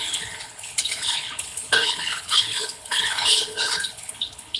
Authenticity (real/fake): fake